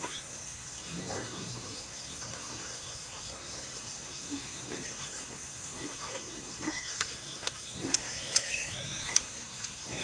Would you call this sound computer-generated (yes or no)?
yes